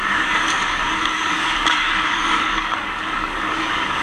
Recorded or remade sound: remade